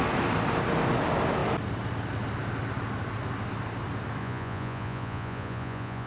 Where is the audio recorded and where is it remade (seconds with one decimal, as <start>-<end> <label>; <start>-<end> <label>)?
0.0-4.2 recorded; 4.2-6.1 remade